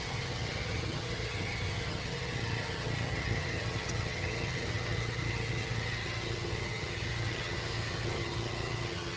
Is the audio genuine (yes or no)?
no